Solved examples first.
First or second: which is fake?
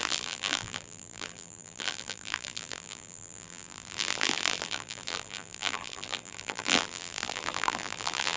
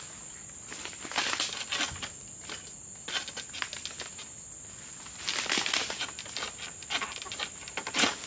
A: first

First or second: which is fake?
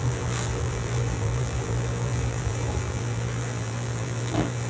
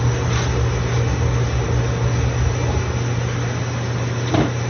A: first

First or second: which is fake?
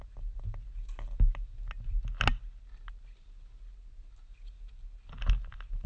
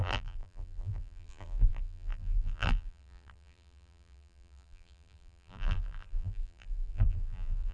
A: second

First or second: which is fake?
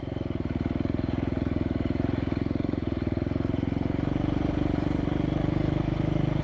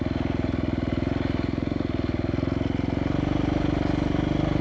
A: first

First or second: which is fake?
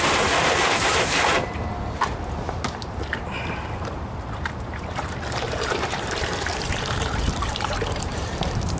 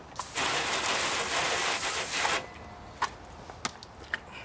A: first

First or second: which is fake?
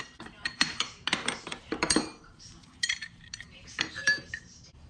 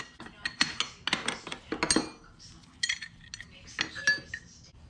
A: first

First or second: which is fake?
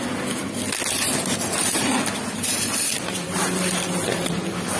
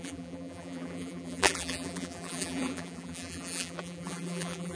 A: second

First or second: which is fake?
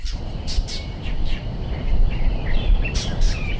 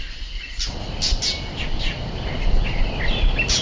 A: first